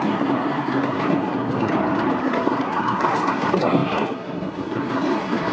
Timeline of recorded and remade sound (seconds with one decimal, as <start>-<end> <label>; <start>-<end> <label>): 0.0-1.7 remade; 1.7-2.2 recorded; 2.2-5.5 remade